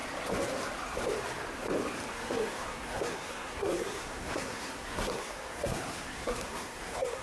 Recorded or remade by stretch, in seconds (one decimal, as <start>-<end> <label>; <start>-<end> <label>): 0.0-2.1 recorded; 2.1-7.2 remade